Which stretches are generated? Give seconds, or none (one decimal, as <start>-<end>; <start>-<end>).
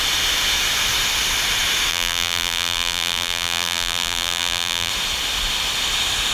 1.9-4.9